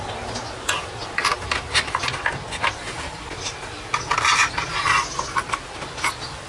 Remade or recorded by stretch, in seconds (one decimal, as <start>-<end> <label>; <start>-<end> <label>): 0.0-6.5 recorded